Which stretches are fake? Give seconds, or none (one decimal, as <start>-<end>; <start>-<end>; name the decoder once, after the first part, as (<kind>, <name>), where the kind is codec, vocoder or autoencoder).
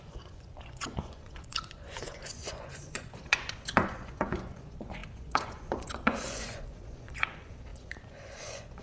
0.0-8.8 (vocoder, Vocos)